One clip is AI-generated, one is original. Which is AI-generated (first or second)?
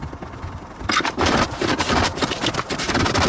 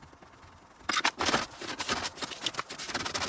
first